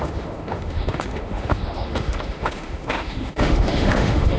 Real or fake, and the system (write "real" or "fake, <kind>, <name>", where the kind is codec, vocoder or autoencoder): fake, autoencoder, DAC-VAE